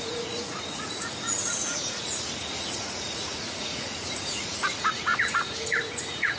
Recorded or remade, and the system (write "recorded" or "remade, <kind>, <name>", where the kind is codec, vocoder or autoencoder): remade, vocoder, Vocos